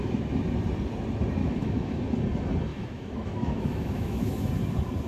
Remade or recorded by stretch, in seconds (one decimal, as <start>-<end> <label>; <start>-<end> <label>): 0.0-1.4 recorded; 1.4-2.0 remade; 2.0-2.7 recorded; 2.7-4.5 remade; 4.5-5.1 recorded

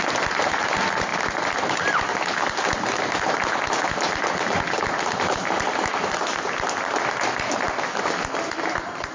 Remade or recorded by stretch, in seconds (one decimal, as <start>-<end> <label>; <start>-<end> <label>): 0.0-9.1 recorded

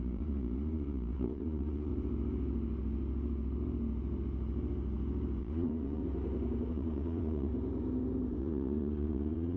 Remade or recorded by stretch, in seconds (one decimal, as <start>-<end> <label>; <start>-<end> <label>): 0.0-1.9 remade; 1.9-5.4 recorded; 5.4-6.0 remade; 6.0-6.7 recorded; 6.7-7.5 remade; 7.5-8.4 recorded; 8.4-9.6 remade